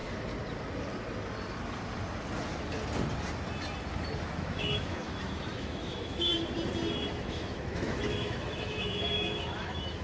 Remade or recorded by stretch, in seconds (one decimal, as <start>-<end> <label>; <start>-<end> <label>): 0.0-4.4 recorded; 4.4-6.3 remade; 6.3-7.1 recorded; 7.1-10.0 remade